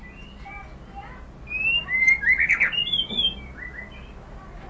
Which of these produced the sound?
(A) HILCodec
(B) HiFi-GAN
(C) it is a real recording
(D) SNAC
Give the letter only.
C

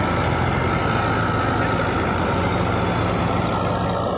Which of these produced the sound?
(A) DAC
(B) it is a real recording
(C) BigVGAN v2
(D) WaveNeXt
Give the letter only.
B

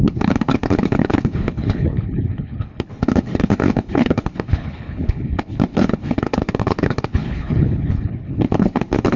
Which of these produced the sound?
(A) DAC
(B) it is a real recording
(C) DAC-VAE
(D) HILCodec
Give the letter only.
D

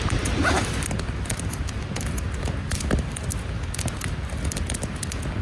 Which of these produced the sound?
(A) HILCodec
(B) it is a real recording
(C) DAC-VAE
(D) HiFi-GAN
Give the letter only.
B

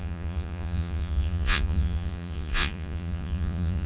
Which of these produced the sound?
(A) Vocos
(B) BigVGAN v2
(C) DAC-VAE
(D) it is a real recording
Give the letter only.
A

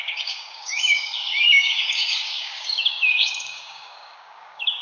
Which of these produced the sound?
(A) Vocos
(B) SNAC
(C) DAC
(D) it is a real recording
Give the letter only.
C